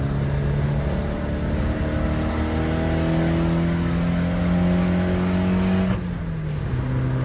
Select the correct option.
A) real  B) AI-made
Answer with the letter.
A